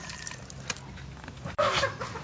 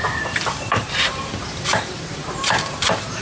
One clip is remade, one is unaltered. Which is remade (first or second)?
second